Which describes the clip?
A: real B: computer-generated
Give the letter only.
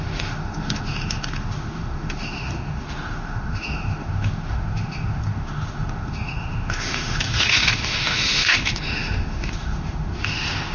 B